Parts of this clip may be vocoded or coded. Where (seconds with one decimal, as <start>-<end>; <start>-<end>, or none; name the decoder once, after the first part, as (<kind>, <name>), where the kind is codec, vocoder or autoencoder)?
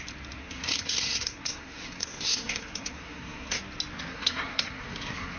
0.4-3.6 (codec, SNAC); 4.1-5.4